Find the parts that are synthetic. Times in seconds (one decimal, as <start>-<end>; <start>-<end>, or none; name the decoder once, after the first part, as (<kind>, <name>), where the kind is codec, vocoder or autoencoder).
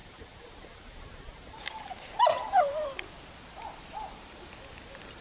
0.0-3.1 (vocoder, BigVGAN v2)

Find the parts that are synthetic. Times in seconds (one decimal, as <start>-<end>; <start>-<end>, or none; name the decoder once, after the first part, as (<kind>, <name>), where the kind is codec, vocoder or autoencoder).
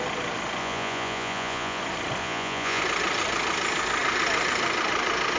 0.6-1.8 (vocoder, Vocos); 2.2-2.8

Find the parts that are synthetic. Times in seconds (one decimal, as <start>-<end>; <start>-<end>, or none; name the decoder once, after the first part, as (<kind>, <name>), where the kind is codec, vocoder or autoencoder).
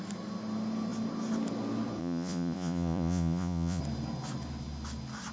2.0-3.8 (vocoder, Vocos)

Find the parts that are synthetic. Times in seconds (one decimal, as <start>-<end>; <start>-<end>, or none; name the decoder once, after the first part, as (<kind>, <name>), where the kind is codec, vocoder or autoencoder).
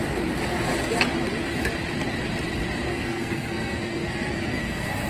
2.9-5.1 (codec, SNAC)